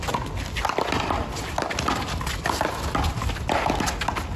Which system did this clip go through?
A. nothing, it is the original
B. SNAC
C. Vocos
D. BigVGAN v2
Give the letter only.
A